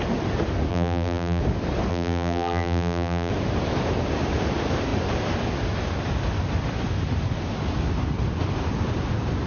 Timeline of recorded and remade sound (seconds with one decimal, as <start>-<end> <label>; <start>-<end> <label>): 0.0-0.7 recorded; 0.7-1.4 remade; 1.4-1.9 recorded; 1.9-3.3 remade; 3.3-9.5 recorded